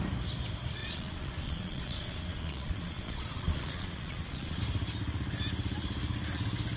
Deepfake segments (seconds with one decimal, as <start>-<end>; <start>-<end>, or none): 0.8-4.6